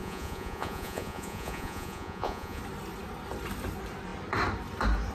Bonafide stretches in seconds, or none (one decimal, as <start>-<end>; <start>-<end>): 2.6-5.1